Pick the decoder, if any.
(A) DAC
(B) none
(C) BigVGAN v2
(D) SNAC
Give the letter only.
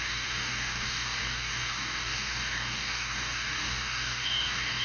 A